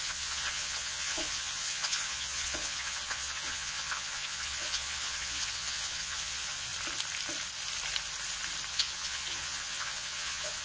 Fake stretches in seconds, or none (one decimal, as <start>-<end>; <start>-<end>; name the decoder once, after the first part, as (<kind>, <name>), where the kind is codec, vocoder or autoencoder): 0.0-6.7 (vocoder, Vocos); 8.7-10.6